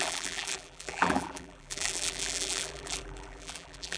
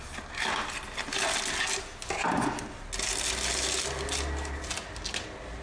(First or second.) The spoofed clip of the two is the first